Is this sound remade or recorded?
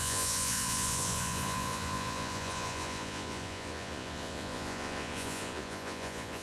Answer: remade